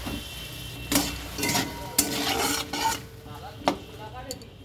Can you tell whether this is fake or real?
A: real